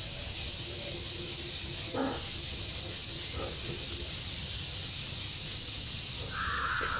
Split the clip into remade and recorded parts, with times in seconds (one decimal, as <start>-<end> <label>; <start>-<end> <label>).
0.0-7.0 recorded